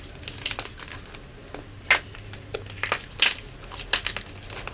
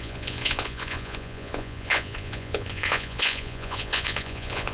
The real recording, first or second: first